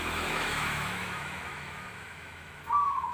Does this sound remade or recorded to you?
remade